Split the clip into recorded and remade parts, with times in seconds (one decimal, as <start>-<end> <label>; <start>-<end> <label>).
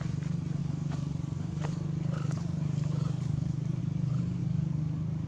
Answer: 0.0-0.6 recorded; 0.6-3.8 remade; 3.8-4.4 recorded; 4.4-5.3 remade